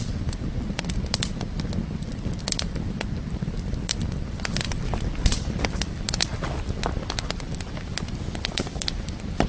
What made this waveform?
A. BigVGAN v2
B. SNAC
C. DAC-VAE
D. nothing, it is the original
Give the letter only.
A